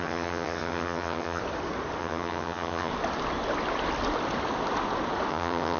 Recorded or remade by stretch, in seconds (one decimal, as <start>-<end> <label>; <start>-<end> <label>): 0.0-1.4 remade; 1.4-2.0 recorded; 2.0-2.9 remade; 2.9-5.3 recorded; 5.3-5.8 remade

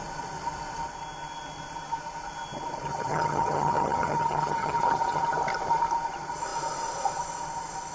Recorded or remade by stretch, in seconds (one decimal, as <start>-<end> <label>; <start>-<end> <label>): 0.0-2.9 recorded; 2.9-5.2 remade; 5.2-7.9 recorded

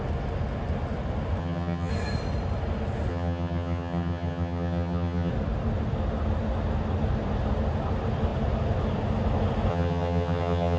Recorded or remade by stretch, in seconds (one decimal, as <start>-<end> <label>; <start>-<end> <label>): 0.0-1.4 recorded; 1.4-1.9 remade; 1.9-3.1 recorded; 3.1-5.3 remade; 5.3-9.7 recorded; 9.7-10.8 remade

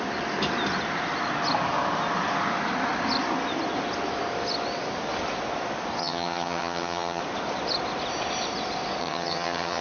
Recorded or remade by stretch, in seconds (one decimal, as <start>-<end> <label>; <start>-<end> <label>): 0.0-6.0 recorded; 6.0-7.2 remade; 7.2-9.0 recorded; 9.0-9.8 remade

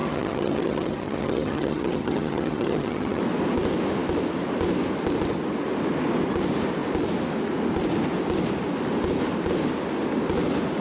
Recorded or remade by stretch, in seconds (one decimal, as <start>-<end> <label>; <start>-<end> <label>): 0.0-3.2 remade; 3.2-10.8 recorded